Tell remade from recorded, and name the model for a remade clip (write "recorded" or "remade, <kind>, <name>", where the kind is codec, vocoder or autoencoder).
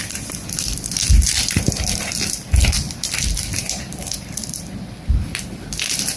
remade, vocoder, BigVGAN v2